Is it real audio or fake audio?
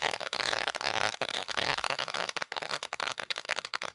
fake